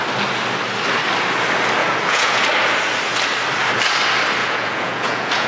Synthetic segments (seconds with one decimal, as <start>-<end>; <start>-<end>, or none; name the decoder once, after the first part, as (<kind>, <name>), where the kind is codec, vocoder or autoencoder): 1.8-2.4 (vocoder, Vocos); 4.4-5.5